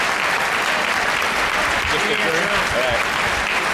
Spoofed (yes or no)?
no